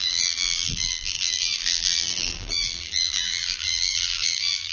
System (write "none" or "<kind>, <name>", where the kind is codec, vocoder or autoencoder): vocoder, BigVGAN v2